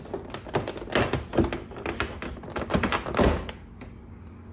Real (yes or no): yes